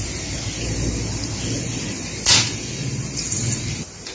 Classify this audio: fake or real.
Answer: real